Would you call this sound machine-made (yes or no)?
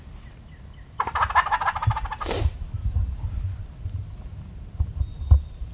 no